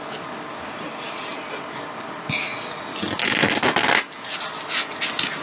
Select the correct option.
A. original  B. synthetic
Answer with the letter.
A